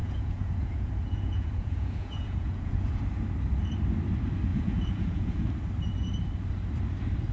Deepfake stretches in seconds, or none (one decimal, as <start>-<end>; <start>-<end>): 0.0-3.0; 4.5-5.5